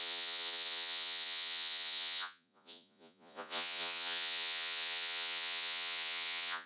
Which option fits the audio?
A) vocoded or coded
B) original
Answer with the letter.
A